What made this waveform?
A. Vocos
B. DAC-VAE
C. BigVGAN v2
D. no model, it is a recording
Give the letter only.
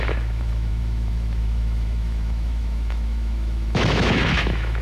B